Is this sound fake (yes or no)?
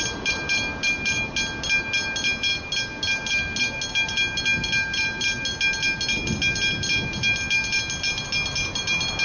no